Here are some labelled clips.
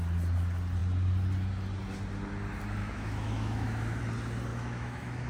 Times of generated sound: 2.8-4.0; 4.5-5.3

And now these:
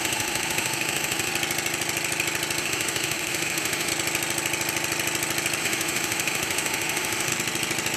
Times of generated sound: 0.0-1.3; 2.6-3.9; 5.6-7.3

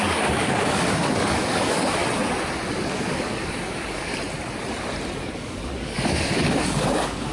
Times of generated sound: 0.0-2.0; 2.8-4.1; 5.2-7.3

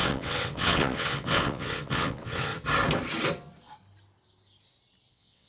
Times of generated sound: 0.0-2.5; 5.1-5.5

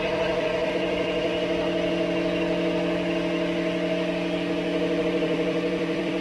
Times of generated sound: 0.0-1.3; 5.0-6.2

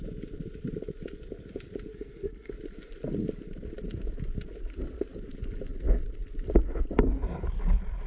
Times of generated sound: 1.9-2.5